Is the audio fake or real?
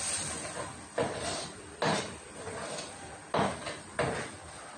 real